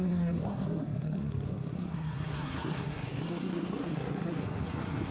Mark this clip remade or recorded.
remade